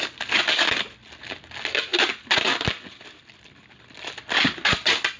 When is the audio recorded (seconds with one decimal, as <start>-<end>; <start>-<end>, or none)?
0.0-5.2